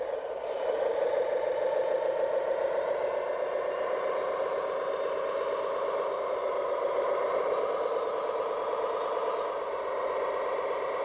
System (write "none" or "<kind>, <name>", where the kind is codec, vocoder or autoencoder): none